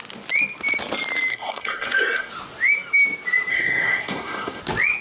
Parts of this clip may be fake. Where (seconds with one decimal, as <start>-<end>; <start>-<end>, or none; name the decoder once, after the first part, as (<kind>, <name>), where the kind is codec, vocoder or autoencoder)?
1.3-2.3 (codec, SNAC); 3.5-4.6